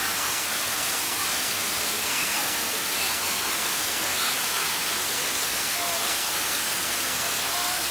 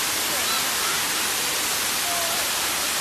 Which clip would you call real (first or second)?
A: second